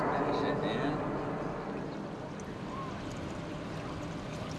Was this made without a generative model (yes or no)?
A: yes